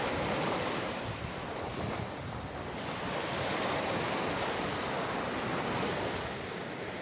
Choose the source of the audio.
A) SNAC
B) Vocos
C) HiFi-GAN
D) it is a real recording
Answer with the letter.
D